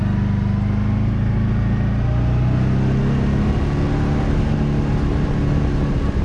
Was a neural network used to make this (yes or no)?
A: no